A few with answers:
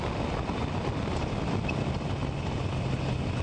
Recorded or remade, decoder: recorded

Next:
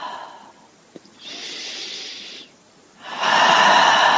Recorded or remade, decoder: recorded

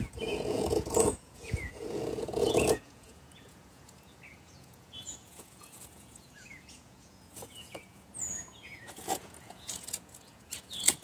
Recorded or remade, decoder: remade, vocoder, Vocos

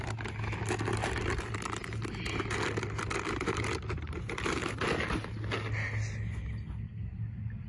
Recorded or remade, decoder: recorded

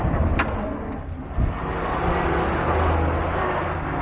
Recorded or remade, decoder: recorded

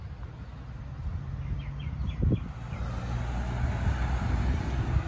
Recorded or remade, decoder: recorded